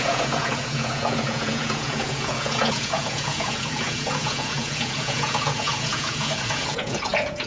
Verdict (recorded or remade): remade